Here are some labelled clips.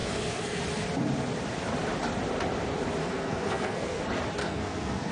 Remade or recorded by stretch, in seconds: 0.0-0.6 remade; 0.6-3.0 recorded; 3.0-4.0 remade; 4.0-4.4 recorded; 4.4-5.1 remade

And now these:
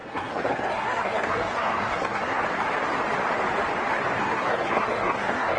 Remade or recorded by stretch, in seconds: 0.0-2.4 remade; 2.4-4.2 recorded; 4.2-5.6 remade

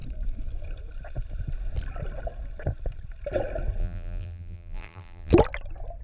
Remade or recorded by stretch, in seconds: 0.0-3.8 recorded; 3.8-5.3 remade; 5.3-6.0 recorded

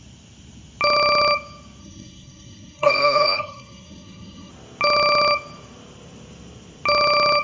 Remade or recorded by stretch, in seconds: 0.0-1.8 recorded; 1.8-4.5 remade; 4.5-7.4 recorded

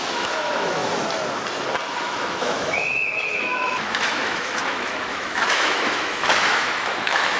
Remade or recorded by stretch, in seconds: 0.0-0.8 remade; 0.8-2.0 recorded; 2.0-7.4 remade